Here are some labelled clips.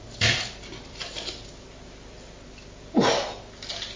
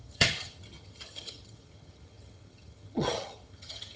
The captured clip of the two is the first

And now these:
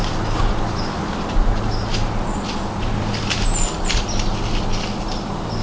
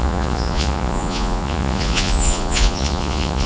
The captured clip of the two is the first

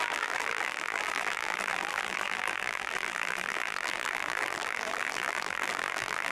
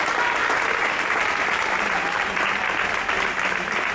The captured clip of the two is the second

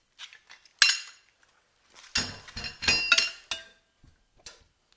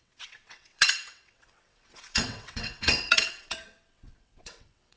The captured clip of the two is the first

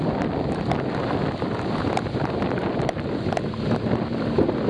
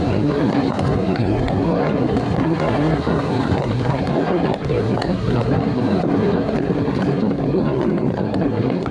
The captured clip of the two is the first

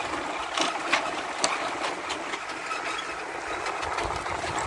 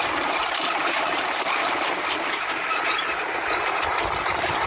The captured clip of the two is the first